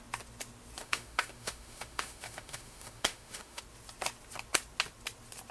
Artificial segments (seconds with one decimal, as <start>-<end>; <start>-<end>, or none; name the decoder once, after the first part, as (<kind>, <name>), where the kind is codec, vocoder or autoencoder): 0.8-3.6 (autoencoder, DAC-VAE)